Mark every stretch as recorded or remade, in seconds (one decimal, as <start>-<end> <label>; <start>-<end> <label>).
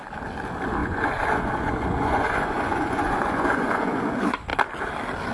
0.0-0.8 recorded; 0.8-4.0 remade; 4.0-5.3 recorded